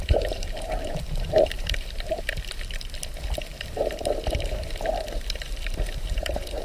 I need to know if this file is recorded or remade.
remade